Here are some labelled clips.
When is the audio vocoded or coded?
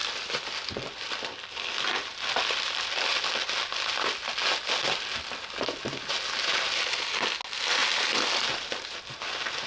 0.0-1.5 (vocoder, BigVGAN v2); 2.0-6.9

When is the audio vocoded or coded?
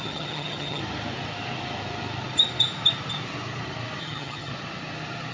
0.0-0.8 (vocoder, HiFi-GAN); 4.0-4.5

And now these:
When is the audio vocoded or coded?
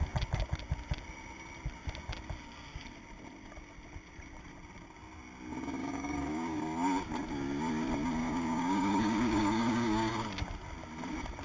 5.8-6.6 (codec, DAC); 8.2-10.1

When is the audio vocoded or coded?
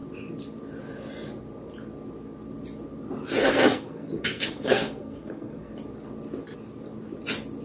3.4-5.7 (codec, SNAC)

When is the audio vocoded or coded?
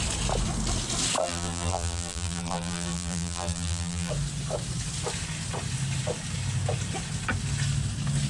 1.2-4.1 (vocoder, BigVGAN v2)